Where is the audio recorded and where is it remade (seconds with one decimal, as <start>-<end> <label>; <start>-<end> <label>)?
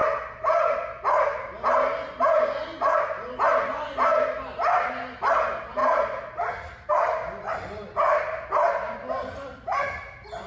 0.0-10.5 recorded